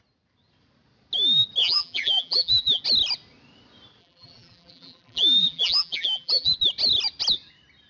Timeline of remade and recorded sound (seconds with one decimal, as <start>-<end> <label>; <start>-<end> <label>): 0.0-1.6 recorded; 1.6-2.8 remade; 2.8-4.0 recorded; 4.0-6.5 remade; 6.5-7.9 recorded